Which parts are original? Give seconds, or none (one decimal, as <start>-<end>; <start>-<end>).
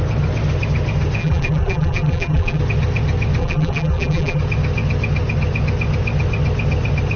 0.0-1.2; 2.6-3.4; 4.4-7.2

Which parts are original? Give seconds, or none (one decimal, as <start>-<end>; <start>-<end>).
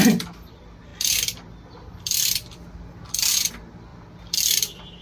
0.0-3.9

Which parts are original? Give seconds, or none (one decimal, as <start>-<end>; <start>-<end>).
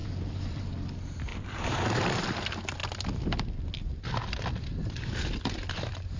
0.6-1.3; 1.8-6.2